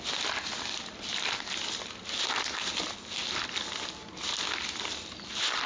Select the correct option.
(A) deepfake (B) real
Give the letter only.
B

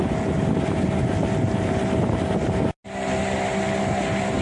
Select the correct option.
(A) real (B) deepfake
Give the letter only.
A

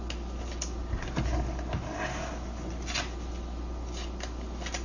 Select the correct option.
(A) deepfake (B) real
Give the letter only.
B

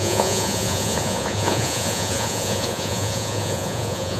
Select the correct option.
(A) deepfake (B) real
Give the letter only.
A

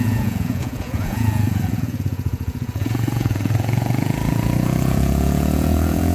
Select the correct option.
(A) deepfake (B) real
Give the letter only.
A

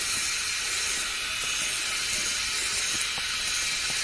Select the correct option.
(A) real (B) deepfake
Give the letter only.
A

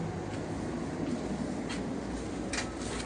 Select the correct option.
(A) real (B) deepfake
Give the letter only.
A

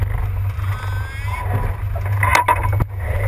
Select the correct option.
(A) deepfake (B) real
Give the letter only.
B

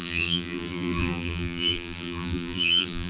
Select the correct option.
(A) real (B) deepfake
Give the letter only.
B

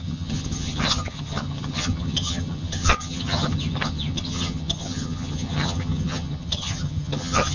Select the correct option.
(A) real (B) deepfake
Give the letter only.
B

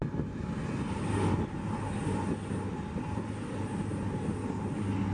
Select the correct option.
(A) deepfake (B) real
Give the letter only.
B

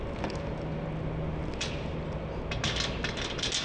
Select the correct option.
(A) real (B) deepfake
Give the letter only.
A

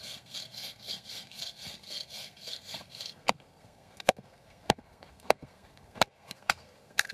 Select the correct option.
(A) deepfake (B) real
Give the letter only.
A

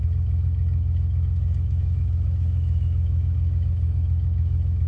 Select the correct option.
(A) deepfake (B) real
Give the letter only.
A